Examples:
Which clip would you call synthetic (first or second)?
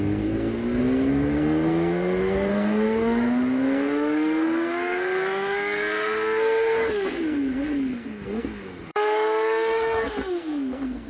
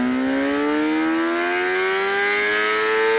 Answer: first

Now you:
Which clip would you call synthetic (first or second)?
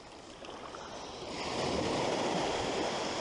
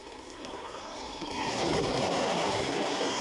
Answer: second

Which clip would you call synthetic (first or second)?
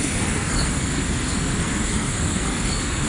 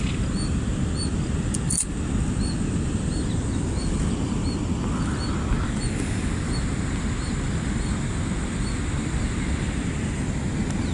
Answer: first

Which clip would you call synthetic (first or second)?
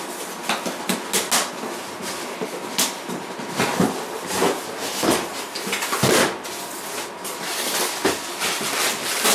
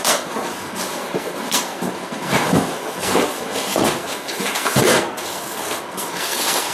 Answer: second